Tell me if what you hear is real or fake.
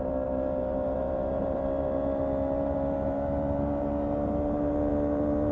fake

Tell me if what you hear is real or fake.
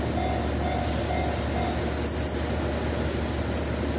real